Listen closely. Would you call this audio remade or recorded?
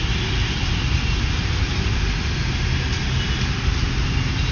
recorded